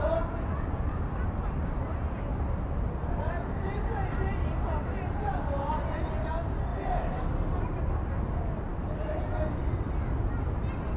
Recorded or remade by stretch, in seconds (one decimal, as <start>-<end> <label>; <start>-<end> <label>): 0.0-11.0 recorded